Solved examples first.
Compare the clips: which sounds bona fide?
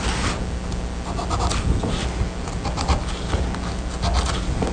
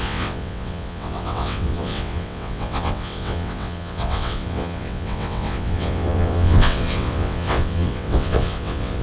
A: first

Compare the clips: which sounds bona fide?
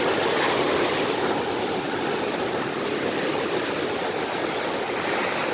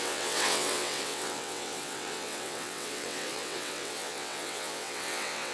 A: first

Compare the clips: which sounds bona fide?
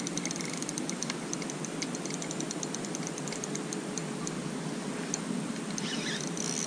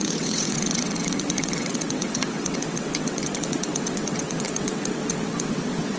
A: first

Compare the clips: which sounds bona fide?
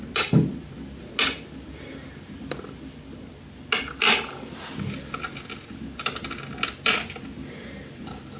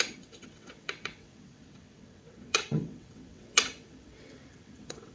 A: first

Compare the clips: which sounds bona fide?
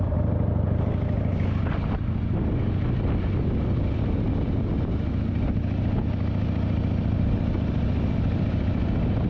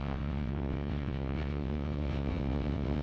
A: first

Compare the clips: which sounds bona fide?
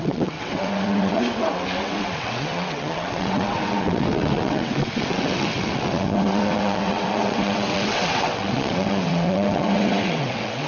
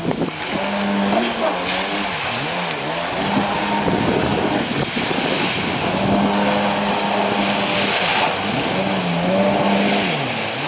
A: second